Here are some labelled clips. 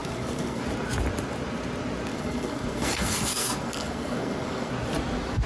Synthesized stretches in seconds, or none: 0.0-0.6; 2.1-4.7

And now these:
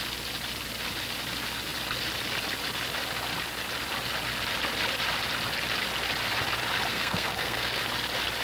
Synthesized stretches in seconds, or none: 6.9-7.8

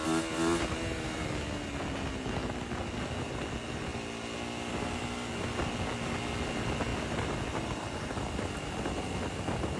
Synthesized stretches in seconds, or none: none

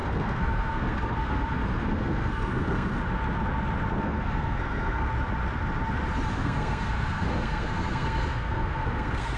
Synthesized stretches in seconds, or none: 0.0-3.0; 4.0-5.1; 6.3-9.4

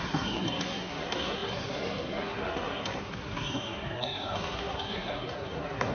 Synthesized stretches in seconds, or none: 0.0-5.9